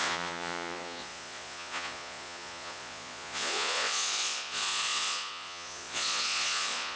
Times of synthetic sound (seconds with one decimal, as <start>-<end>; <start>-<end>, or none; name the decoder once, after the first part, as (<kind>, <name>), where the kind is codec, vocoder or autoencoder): 0.0-7.0 (vocoder, Vocos)

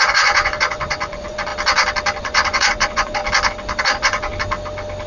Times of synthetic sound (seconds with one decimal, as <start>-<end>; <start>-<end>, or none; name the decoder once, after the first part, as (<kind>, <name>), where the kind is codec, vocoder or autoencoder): 0.0-1.5 (vocoder, Vocos); 2.2-3.2; 3.8-4.3